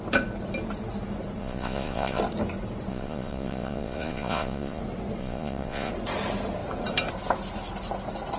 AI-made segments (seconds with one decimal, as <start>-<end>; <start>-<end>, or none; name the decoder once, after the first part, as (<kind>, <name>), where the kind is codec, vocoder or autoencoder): 1.4-2.2 (vocoder, Vocos); 2.9-4.8; 5.2-5.9